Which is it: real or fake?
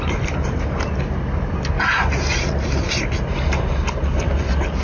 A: real